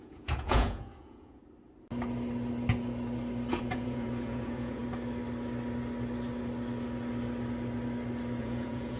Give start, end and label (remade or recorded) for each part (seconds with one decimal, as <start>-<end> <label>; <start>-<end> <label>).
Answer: 0.0-1.4 remade; 1.4-3.5 recorded; 3.5-4.8 remade; 4.8-8.4 recorded; 8.4-9.0 remade